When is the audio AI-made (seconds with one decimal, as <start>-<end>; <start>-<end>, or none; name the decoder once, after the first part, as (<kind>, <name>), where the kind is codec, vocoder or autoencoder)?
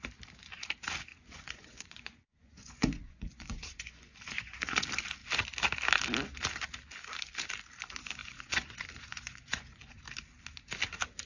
1.1-4.8 (vocoder, Vocos); 8.2-10.0